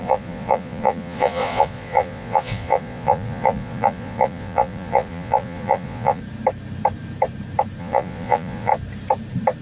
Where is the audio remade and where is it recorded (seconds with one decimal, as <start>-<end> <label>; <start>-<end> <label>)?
0.0-6.2 remade; 6.2-7.8 recorded; 7.8-8.7 remade; 8.7-9.6 recorded